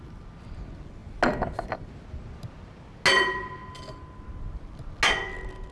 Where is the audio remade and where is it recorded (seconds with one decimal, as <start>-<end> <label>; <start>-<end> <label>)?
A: 0.0-5.7 recorded